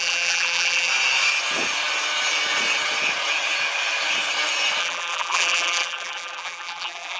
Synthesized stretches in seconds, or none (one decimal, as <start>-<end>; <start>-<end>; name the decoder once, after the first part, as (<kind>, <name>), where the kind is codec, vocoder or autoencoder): 0.0-0.9 (vocoder, BigVGAN v2); 4.8-7.2